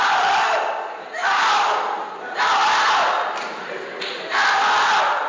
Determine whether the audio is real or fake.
real